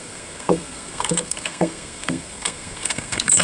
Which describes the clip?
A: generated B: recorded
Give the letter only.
A